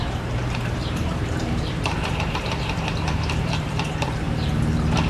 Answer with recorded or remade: remade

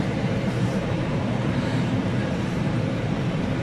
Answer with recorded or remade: remade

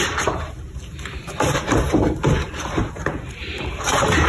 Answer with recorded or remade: remade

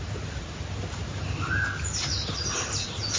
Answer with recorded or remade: recorded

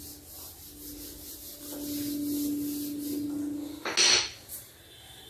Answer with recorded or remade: recorded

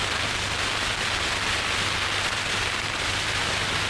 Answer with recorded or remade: recorded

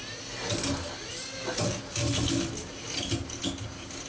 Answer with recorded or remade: recorded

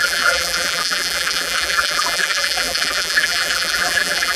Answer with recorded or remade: remade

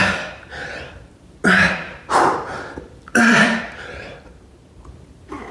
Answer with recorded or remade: remade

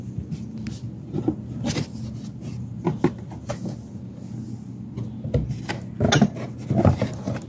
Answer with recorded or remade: recorded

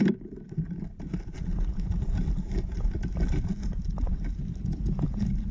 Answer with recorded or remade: recorded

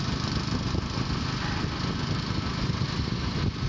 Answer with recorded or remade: recorded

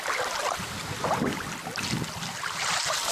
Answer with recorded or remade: recorded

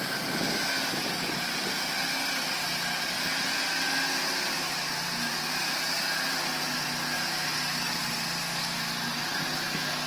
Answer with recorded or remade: recorded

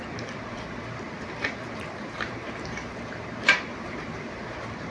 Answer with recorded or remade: remade